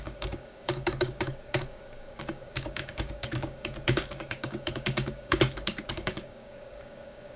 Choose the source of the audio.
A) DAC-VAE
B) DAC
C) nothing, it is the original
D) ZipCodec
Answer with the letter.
B